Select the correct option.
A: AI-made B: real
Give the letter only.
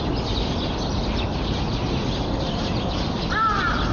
B